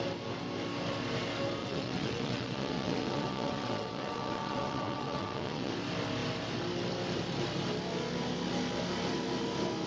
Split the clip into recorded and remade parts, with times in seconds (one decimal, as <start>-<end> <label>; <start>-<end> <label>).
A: 0.0-1.6 recorded; 1.6-5.7 remade; 5.7-9.9 recorded